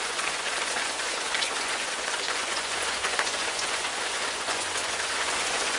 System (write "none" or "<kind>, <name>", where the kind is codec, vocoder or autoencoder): vocoder, Vocos